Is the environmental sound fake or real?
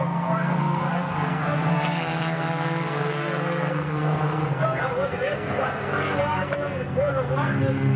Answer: fake